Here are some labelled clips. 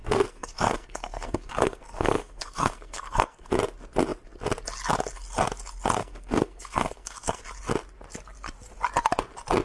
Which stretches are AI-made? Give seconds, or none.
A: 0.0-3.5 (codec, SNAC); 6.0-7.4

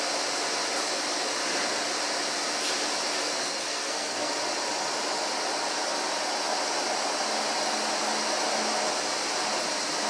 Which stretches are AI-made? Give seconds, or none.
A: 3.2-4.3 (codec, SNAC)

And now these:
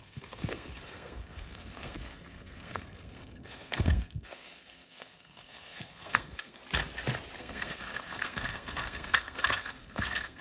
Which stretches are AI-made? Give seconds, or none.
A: 0.0-6.6 (codec, SNAC); 7.4-10.4

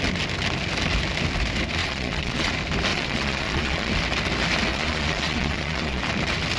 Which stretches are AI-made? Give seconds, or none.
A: 1.8-2.5 (vocoder, Vocos); 2.9-3.9; 4.7-6.0

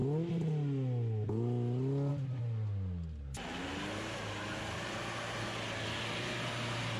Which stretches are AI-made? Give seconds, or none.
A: none

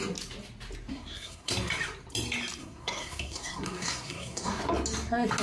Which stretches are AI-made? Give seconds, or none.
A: 0.9-1.5 (codec, SNAC); 2.6-4.6

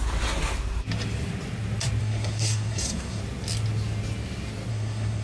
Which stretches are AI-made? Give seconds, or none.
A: 2.0-3.2 (codec, SNAC); 4.7-5.2